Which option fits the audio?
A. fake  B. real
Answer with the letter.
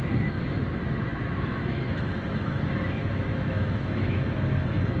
A